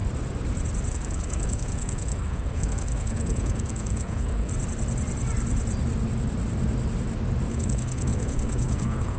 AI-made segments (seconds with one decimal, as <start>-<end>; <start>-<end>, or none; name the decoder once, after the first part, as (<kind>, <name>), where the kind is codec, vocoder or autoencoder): 0.9-4.5 (codec, SNAC); 7.5-9.2